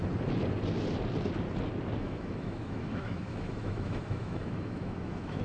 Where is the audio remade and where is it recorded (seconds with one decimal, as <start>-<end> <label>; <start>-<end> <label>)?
0.0-2.0 recorded; 2.0-5.4 remade